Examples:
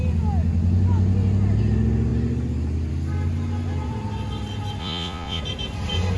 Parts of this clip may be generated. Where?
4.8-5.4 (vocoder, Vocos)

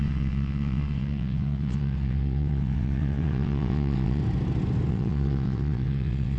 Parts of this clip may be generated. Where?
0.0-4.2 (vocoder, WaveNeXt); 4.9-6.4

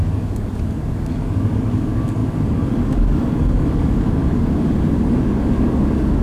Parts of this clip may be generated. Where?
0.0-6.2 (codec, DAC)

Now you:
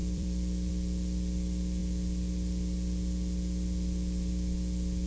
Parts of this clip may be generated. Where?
0.0-0.7 (vocoder, BigVGAN v2)